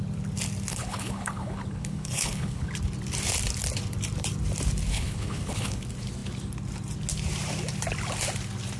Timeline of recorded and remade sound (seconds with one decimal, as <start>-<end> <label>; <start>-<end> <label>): 0.0-0.7 recorded; 0.7-2.7 remade; 2.7-4.9 recorded; 4.9-5.8 remade; 5.8-8.8 recorded